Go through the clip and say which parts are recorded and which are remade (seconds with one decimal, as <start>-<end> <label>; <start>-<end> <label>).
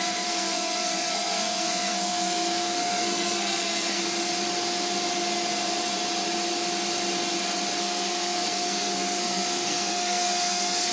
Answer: 0.0-4.0 remade; 4.0-7.8 recorded; 7.8-10.9 remade